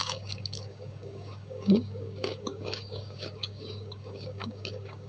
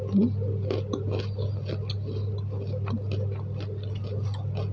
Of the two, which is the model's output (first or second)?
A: first